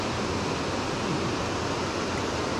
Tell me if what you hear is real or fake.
real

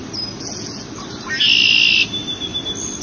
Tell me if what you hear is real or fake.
real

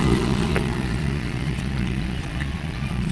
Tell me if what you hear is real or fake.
fake